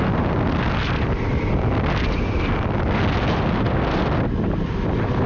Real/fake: real